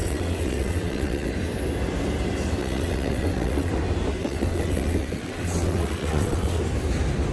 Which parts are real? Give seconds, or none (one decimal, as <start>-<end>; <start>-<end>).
1.3-2.6; 3.7-4.2; 6.6-7.3